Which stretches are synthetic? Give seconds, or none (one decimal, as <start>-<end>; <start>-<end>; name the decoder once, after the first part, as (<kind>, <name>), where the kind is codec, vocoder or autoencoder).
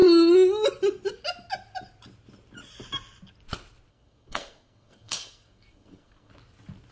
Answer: 3.9-6.3 (codec, SNAC)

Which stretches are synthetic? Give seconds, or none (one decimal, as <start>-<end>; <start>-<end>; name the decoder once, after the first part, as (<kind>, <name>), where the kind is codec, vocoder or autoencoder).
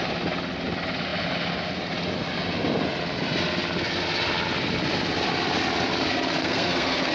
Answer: 6.4-7.1 (codec, SNAC)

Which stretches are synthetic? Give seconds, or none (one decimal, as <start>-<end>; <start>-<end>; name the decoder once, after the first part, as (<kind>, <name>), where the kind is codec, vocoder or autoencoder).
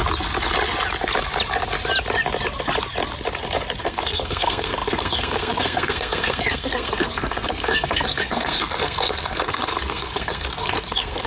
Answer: 3.8-11.3 (codec, SNAC)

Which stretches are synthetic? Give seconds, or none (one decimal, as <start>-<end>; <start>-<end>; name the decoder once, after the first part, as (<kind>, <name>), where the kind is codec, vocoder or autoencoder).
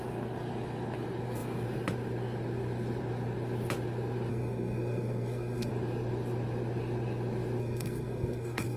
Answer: 4.3-5.7 (codec, SNAC); 7.6-8.8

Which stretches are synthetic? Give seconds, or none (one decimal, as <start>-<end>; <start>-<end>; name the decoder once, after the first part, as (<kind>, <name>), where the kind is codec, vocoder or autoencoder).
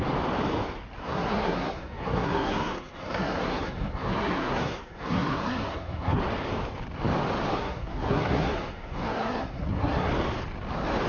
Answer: 1.0-6.2 (codec, SNAC); 7.5-10.1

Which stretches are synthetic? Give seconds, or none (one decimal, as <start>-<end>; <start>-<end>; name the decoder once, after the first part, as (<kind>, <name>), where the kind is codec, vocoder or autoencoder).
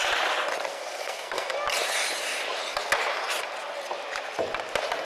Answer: 0.7-1.5 (codec, SNAC)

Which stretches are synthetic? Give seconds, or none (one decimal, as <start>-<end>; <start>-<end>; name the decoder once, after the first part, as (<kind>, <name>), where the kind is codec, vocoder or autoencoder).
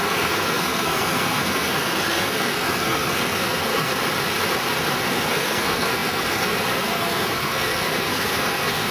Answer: 0.0-4.0 (codec, SNAC); 5.1-8.9